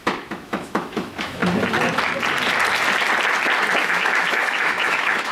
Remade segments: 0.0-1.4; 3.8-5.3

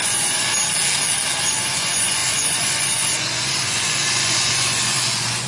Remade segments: 0.0-0.5; 1.4-5.5

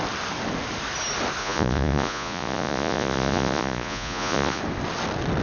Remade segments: 1.4-4.6

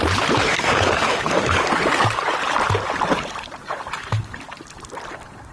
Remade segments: 0.5-1.7

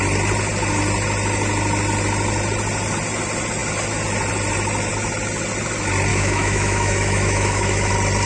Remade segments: 6.1-7.9

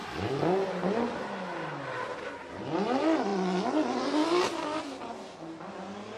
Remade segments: none

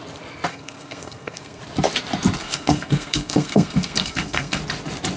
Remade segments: 0.5-1.6; 2.4-4.6